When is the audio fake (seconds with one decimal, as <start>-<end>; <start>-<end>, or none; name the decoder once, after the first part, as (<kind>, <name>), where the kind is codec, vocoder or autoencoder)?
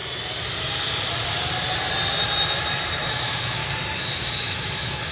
3.1-3.6 (autoencoder, DAC-VAE); 4.1-5.1